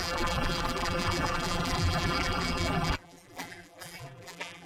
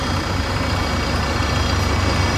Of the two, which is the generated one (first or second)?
first